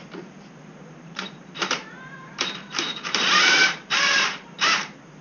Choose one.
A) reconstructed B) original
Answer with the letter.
A